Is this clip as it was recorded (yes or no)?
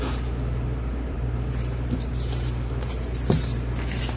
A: no